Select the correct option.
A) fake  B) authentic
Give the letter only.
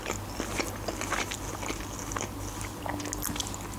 B